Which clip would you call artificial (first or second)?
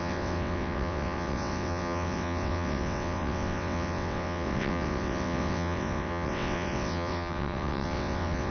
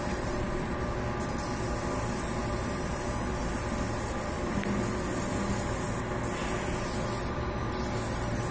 first